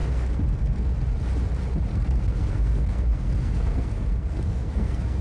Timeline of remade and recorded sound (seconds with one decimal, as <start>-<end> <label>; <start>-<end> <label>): 0.0-0.9 remade; 0.9-1.9 recorded; 1.9-5.2 remade